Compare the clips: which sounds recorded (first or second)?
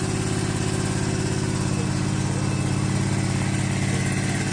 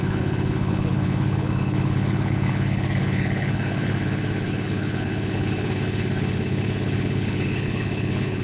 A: first